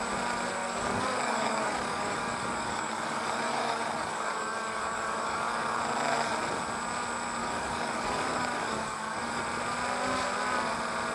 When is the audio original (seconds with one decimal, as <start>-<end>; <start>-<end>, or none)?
0.0-0.6; 5.8-7.4; 9.4-11.1

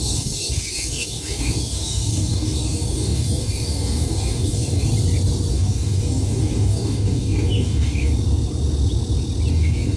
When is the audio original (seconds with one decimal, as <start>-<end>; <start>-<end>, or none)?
4.9-5.5; 8.1-9.5